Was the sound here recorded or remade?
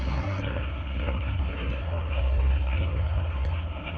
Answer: remade